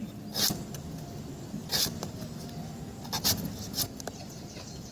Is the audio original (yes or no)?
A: yes